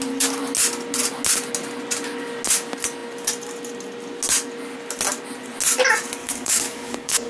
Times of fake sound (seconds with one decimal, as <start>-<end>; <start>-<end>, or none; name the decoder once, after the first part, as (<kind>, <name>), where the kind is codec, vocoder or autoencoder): 6.2-7.3 (codec, DAC)